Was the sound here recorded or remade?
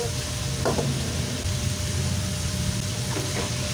remade